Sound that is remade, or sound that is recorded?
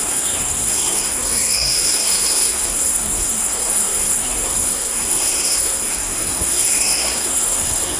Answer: remade